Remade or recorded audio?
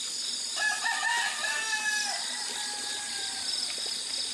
recorded